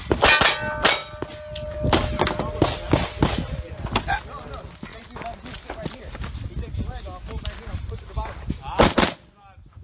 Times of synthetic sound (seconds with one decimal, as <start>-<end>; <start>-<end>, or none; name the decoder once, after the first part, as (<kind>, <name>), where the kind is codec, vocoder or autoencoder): none